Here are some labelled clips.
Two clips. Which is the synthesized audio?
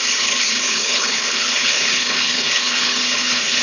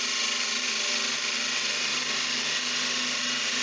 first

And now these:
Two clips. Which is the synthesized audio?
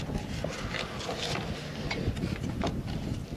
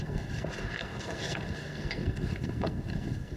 second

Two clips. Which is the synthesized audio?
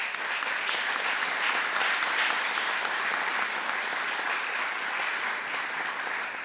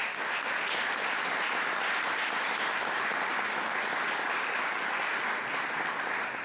first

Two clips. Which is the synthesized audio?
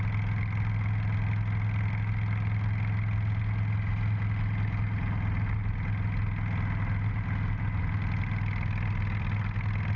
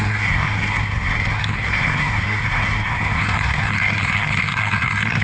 second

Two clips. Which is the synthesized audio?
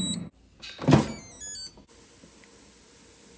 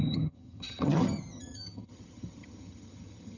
second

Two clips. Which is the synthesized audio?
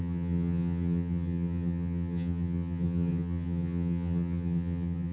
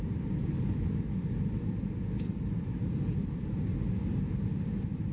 first